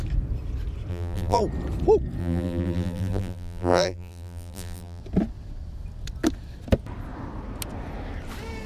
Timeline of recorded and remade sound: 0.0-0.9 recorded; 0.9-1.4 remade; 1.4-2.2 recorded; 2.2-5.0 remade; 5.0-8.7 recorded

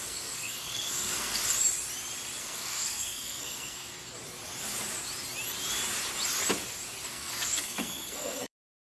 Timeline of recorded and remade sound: 0.0-1.4 remade; 1.4-2.4 recorded; 2.4-4.0 remade; 4.0-7.1 recorded; 7.1-8.9 remade

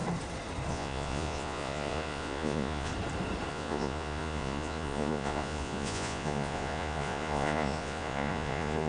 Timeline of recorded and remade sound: 0.0-0.7 recorded; 0.7-2.9 remade; 2.9-3.5 recorded; 3.5-8.9 remade

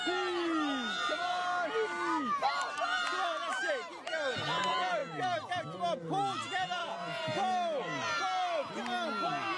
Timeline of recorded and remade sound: 0.0-9.6 recorded

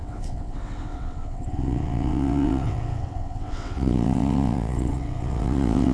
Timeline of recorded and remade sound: 0.0-5.9 remade